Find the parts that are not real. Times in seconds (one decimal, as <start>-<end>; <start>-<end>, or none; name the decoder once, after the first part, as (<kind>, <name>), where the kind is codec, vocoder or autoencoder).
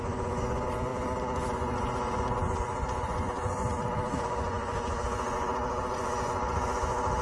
0.0-0.9 (vocoder, Vocos); 1.5-3.6; 4.2-7.2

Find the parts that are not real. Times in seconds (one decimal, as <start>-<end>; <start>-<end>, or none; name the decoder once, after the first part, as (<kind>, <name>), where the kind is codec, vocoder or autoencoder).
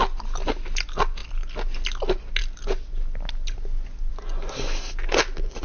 none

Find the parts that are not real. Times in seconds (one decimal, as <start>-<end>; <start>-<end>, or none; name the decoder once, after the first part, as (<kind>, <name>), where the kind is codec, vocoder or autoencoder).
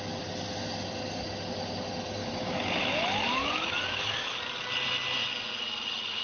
2.2-4.4 (autoencoder, DAC-VAE)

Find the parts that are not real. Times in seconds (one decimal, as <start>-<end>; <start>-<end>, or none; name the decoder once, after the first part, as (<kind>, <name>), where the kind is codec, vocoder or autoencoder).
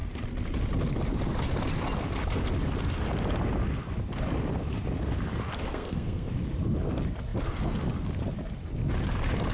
5.7-6.3 (codec, SNAC)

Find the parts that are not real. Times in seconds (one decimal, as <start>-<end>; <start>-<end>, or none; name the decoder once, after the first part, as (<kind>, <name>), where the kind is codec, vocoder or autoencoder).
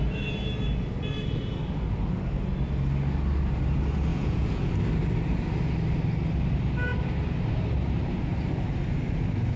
4.1-4.7 (vocoder, Vocos)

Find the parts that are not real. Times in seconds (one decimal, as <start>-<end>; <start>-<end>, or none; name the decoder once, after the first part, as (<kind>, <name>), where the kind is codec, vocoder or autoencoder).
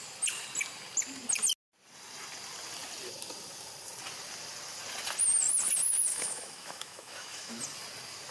6.1-7.6 (autoencoder, DAC-VAE)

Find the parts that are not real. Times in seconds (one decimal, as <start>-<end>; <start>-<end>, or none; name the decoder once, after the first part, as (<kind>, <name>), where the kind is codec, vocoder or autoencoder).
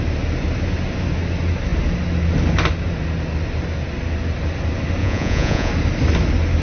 5.0-5.7 (vocoder, Vocos)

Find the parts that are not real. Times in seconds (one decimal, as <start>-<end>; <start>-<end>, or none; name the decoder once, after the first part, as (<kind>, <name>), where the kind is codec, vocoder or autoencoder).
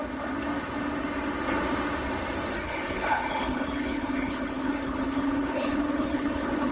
2.6-6.7 (codec, HILCodec)